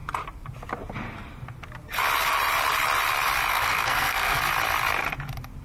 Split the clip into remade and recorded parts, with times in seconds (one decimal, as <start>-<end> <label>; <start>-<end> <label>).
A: 0.0-3.5 recorded; 3.5-4.4 remade; 4.4-5.6 recorded